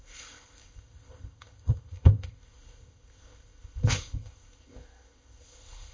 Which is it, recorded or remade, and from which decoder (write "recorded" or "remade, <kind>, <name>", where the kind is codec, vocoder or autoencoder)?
remade, codec, ZipCodec